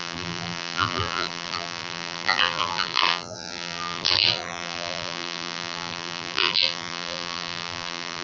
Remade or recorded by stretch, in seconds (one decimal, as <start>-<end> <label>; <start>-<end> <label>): 0.0-8.2 remade